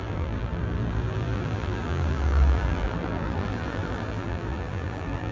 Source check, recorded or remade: remade